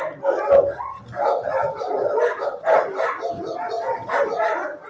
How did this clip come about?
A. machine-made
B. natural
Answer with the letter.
B